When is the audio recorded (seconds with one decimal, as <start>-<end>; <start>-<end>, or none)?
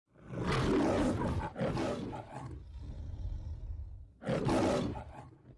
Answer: 0.0-3.0; 3.7-4.7